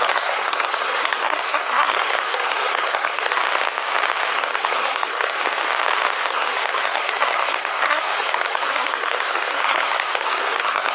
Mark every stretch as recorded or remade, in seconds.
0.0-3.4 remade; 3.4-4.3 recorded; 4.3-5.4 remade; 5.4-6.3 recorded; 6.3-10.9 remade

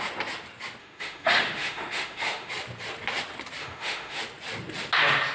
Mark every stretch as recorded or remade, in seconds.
0.0-0.8 recorded; 0.8-2.5 remade; 2.5-3.6 recorded; 3.6-4.2 remade; 4.2-5.3 recorded

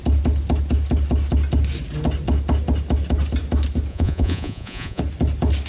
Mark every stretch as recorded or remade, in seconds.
0.0-3.9 recorded; 3.9-5.0 remade; 5.0-5.7 recorded

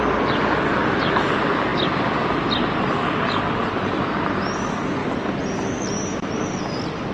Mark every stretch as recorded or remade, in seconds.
0.0-7.1 recorded

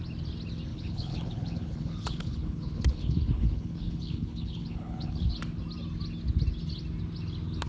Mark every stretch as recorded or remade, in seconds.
0.0-0.7 recorded; 0.7-5.3 remade; 5.3-7.7 recorded